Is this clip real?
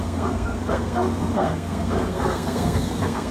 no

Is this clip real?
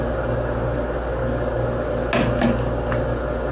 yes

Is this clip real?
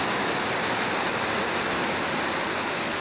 yes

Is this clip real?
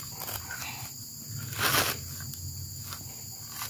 yes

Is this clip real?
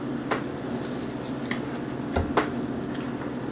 yes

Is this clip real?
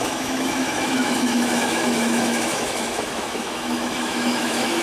no